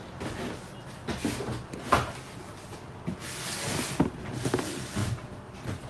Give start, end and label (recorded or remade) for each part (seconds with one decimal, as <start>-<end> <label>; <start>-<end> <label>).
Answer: 0.0-5.9 recorded

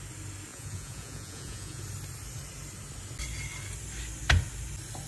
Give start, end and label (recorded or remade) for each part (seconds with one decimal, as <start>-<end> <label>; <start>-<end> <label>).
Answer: 0.0-0.5 recorded; 0.5-1.8 remade; 1.8-5.1 recorded

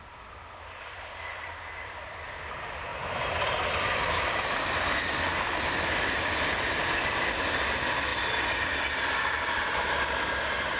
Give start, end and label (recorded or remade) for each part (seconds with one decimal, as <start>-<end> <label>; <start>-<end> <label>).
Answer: 0.0-10.8 recorded

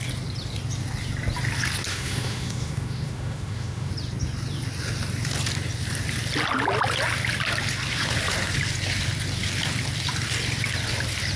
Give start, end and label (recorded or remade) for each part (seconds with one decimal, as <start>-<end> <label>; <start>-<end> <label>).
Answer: 0.0-1.9 recorded; 1.9-3.9 remade; 3.9-11.4 recorded

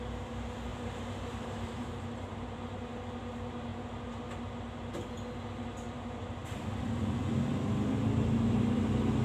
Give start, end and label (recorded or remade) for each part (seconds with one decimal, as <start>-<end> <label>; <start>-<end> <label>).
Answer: 0.0-0.7 recorded; 0.7-2.7 remade; 2.7-9.2 recorded

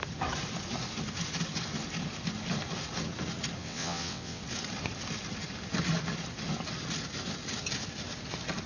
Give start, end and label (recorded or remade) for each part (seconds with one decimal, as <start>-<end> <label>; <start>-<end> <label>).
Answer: 0.0-3.6 recorded; 3.6-4.4 remade; 4.4-8.7 recorded

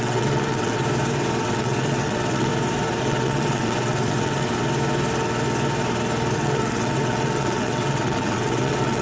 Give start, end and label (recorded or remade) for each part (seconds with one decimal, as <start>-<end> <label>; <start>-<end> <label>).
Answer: 0.0-0.8 remade; 0.8-1.4 recorded; 1.4-2.5 remade; 2.5-3.0 recorded; 3.0-4.5 remade; 4.5-6.3 recorded; 6.3-9.0 remade